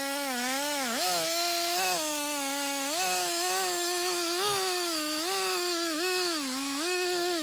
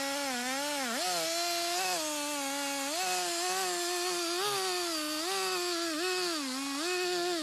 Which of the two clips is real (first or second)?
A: second